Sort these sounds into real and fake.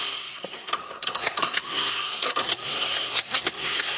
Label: fake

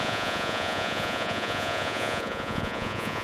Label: fake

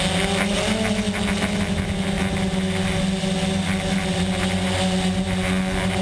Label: real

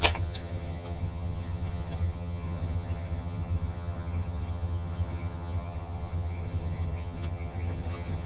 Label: fake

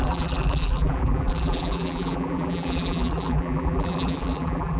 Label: fake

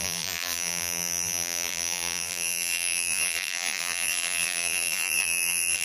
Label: fake